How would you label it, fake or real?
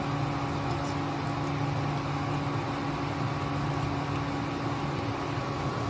real